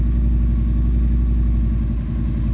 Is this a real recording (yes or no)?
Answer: yes